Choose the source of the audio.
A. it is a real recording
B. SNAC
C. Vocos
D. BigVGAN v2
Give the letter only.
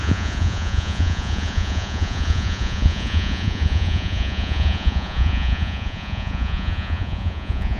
C